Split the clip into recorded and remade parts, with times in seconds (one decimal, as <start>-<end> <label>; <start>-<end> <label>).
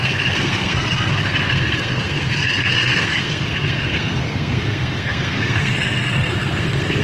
0.0-7.0 remade